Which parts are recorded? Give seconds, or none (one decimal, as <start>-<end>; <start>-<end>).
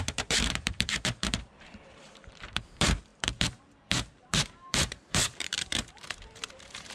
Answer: none